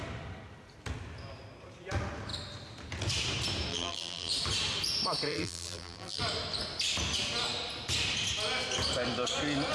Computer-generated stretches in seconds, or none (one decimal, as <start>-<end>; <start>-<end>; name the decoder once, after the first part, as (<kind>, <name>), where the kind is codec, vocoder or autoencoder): 3.7-4.3 (vocoder, BigVGAN v2); 5.3-6.2

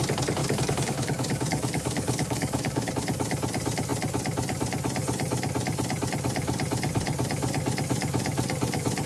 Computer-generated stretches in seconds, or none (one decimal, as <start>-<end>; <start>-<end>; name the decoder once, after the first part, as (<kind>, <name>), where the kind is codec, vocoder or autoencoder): 0.4-2.9 (codec, DAC)

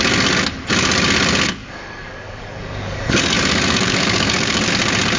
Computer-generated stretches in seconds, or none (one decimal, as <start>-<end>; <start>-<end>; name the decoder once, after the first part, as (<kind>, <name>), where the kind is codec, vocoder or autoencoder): 1.6-4.7 (codec, DAC)